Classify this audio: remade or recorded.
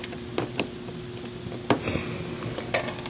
recorded